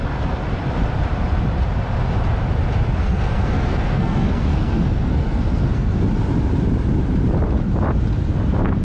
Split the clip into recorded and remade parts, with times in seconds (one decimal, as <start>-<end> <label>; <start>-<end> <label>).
0.0-3.0 recorded; 3.0-6.0 remade; 6.0-8.8 recorded